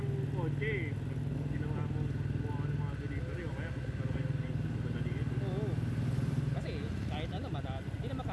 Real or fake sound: real